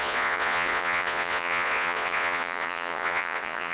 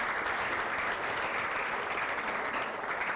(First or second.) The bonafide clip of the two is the second